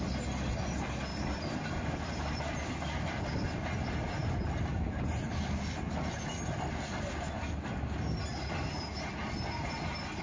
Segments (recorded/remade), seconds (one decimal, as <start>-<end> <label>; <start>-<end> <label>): 0.0-1.1 recorded; 1.1-3.2 remade; 3.2-10.2 recorded